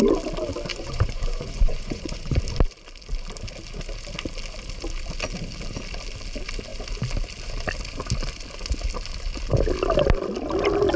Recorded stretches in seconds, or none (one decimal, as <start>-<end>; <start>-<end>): 0.0-0.7; 2.4-11.0